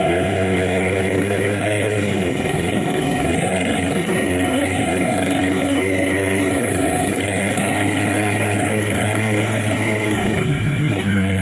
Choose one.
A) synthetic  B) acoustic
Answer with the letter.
A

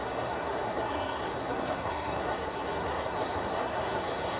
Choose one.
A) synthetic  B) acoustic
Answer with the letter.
A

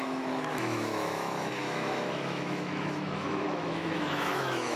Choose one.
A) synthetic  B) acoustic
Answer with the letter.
A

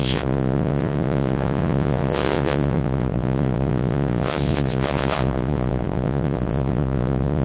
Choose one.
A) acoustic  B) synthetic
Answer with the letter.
B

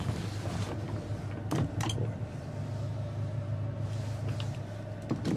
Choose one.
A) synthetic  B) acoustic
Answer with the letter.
B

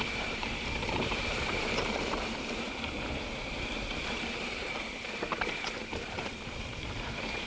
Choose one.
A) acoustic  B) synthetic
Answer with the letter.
B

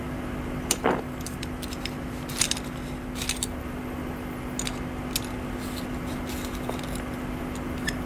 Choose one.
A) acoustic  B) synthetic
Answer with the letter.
A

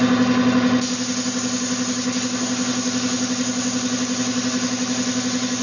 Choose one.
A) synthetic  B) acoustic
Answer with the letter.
B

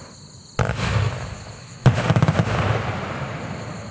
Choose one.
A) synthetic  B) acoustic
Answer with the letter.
B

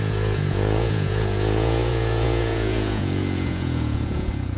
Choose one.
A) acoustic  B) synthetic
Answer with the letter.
B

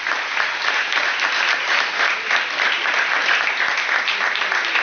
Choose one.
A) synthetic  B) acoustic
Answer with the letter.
B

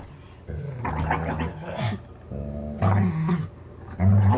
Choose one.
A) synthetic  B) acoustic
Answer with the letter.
B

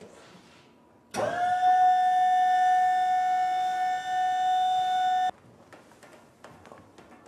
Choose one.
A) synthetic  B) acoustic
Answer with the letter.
B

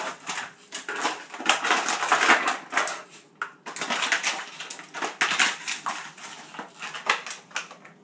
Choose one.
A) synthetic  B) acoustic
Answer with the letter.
B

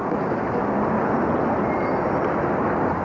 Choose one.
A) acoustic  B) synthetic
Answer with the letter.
A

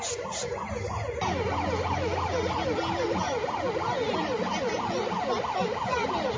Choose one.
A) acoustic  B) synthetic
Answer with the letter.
A